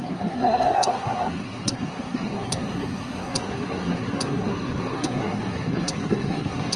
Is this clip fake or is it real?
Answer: fake